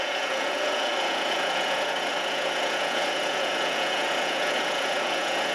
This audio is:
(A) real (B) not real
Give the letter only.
B